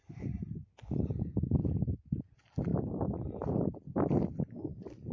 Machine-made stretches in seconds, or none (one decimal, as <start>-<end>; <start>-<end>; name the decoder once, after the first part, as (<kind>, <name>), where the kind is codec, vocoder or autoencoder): none